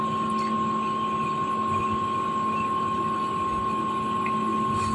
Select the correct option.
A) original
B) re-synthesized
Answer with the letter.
A